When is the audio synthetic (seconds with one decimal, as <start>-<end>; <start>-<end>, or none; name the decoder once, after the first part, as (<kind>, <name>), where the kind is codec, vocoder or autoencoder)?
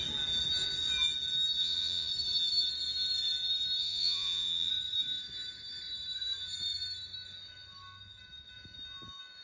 1.6-2.1 (vocoder, Vocos); 3.8-4.7